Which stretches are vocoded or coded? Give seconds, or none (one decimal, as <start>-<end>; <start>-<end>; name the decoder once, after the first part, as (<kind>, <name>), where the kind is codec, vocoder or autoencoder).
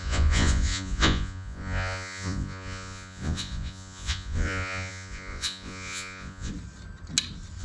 0.0-6.5 (vocoder, Vocos)